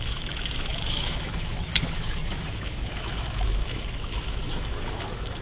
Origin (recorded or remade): remade